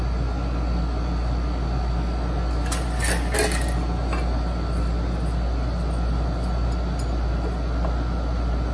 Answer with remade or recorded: recorded